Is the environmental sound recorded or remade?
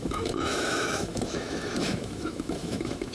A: remade